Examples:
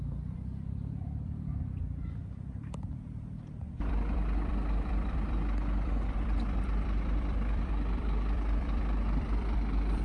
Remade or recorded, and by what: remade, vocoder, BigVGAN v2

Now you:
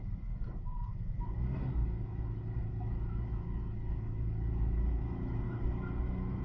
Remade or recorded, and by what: remade, autoencoder, DAC-VAE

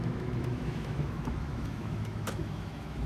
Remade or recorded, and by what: remade, autoencoder, DAC-VAE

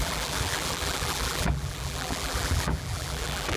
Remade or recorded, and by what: remade, vocoder, BigVGAN v2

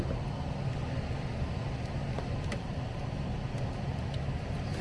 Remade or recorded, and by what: recorded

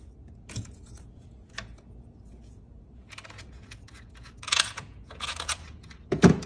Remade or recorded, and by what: remade, vocoder, Vocos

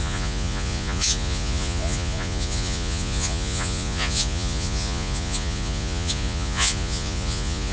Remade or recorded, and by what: remade, vocoder, Vocos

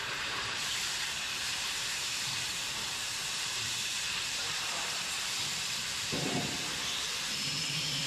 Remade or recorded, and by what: remade, vocoder, BigVGAN v2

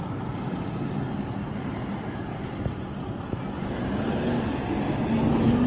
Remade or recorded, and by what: recorded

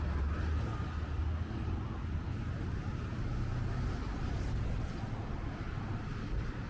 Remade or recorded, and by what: recorded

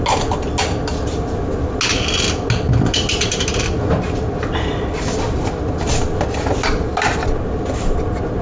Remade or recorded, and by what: recorded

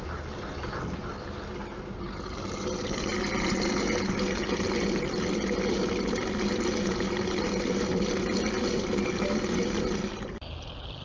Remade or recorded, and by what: recorded